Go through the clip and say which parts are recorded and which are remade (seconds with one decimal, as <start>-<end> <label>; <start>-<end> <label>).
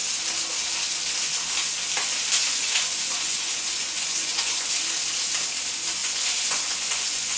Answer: 0.0-2.4 recorded; 2.4-4.7 remade; 4.7-6.0 recorded; 6.0-7.4 remade